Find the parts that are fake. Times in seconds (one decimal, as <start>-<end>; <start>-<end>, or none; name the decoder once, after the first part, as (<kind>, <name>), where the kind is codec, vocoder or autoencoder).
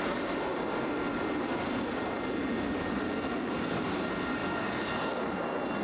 none